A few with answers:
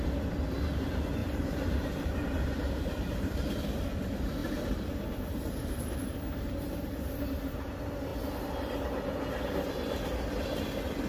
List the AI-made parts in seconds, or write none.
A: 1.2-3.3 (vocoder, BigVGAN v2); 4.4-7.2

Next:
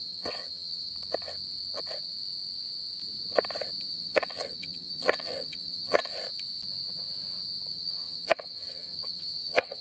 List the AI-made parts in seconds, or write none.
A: 0.0-0.9 (vocoder, HiFi-GAN); 3.9-6.1; 7.7-9.8

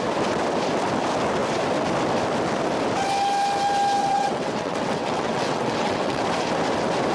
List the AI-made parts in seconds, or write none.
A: 4.0-6.2 (vocoder, WaveNeXt)

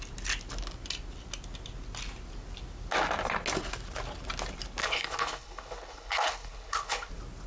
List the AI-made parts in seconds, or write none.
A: 4.8-7.1 (codec, HILCodec)

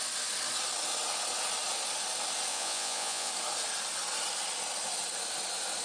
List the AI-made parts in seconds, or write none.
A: 2.5-3.3 (vocoder, Vocos)

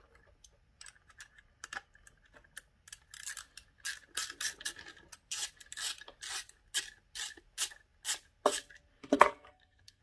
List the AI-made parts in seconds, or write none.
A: 9.0-10.0 (codec, SNAC)

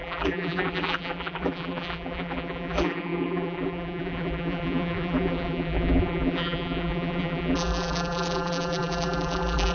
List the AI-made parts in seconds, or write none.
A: 0.0-9.7 (vocoder, BigVGAN v2)